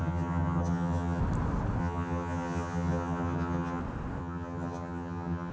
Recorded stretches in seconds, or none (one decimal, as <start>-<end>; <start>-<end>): 1.2-1.8; 3.8-4.2